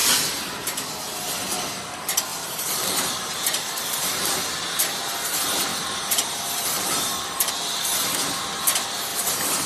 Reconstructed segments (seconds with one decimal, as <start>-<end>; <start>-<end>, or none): 2.3-4.3; 5.7-7.5; 9.1-9.7